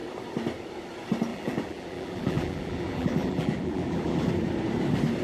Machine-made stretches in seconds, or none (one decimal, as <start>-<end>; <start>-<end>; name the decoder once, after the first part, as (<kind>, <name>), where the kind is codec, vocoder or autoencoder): 1.3-4.3 (vocoder, BigVGAN v2)